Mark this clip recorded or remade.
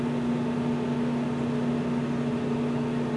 recorded